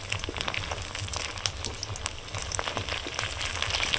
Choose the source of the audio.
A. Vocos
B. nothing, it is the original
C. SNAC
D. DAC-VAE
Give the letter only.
B